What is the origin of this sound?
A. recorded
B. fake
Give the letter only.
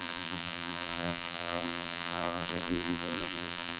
B